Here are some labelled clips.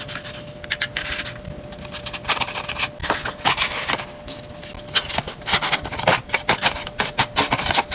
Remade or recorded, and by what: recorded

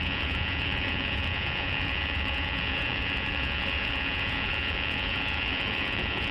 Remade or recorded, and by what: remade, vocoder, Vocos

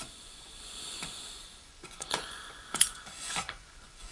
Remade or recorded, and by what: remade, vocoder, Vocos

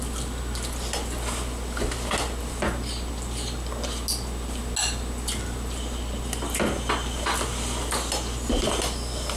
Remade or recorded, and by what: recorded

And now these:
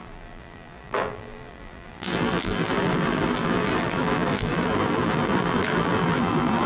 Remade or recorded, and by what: remade, vocoder, BigVGAN v2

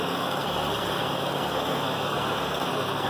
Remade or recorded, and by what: remade, codec, SNAC